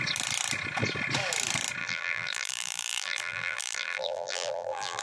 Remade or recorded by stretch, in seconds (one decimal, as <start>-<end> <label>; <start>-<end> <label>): 0.0-1.8 recorded; 1.8-5.0 remade